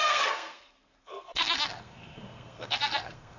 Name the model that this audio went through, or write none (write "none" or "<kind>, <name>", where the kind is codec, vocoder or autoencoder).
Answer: codec, SNAC